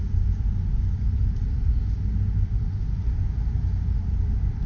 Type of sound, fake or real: real